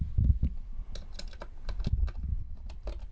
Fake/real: real